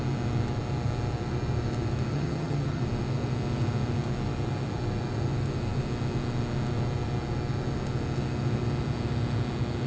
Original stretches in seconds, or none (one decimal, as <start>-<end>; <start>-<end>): 0.0-2.1; 2.8-9.9